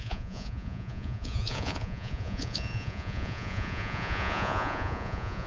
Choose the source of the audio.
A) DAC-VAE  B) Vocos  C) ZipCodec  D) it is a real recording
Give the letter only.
B